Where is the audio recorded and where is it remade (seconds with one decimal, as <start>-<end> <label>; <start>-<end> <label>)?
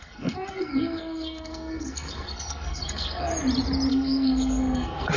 0.0-3.3 remade; 3.3-3.9 recorded; 3.9-5.2 remade